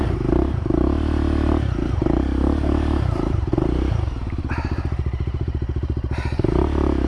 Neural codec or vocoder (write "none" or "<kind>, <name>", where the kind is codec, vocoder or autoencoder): vocoder, BigVGAN v2